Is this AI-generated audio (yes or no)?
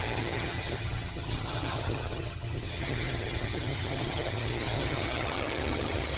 yes